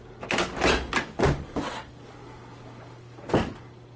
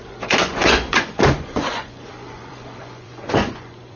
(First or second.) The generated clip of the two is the second